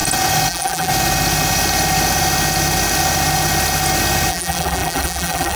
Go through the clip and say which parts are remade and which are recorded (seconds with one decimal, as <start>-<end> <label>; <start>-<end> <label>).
0.0-0.5 recorded; 0.5-0.9 remade; 0.9-4.3 recorded; 4.3-5.6 remade